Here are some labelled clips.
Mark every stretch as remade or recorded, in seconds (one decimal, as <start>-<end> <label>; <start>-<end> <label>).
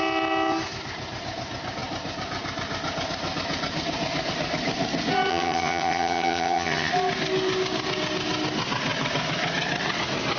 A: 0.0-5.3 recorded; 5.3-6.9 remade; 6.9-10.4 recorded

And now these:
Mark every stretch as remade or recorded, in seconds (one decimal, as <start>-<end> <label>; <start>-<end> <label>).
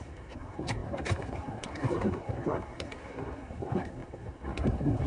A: 0.0-5.1 remade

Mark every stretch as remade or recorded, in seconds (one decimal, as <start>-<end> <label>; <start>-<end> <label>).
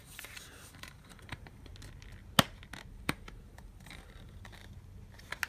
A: 0.0-1.7 remade; 1.7-2.9 recorded; 2.9-4.6 remade; 4.6-5.5 recorded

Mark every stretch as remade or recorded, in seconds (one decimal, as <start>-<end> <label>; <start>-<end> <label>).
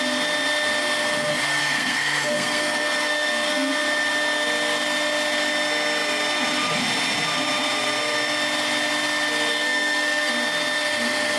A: 0.0-1.6 recorded; 1.6-3.7 remade; 3.7-9.5 recorded; 9.5-10.3 remade; 10.3-11.4 recorded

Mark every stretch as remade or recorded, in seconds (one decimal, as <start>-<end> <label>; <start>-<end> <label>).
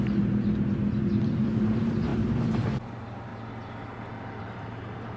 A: 0.0-3.3 remade; 3.3-4.4 recorded; 4.4-5.2 remade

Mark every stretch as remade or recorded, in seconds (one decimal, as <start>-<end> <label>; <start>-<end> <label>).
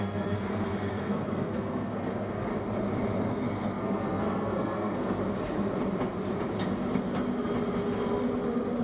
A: 0.0-2.5 remade; 2.5-3.3 recorded; 3.3-5.2 remade; 5.2-8.8 recorded